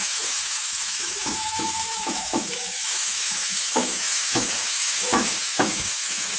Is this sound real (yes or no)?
no